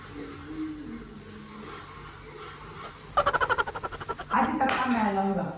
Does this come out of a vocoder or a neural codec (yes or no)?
no